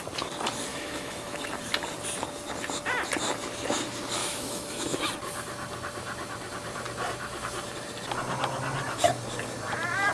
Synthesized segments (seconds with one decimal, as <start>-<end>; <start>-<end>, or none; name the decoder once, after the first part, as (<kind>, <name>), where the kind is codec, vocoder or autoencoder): 0.7-1.5 (autoencoder, DAC-VAE); 4.2-5.0